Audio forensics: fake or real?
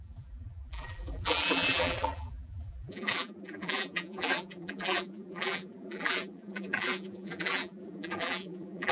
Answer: fake